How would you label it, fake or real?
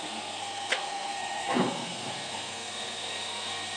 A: fake